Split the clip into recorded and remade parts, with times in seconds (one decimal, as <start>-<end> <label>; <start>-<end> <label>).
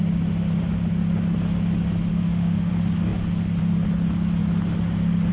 0.0-2.1 recorded; 2.1-2.7 remade; 2.7-5.3 recorded